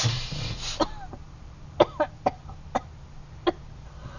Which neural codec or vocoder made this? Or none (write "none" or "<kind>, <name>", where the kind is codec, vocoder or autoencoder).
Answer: none